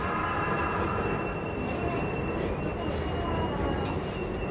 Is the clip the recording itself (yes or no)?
yes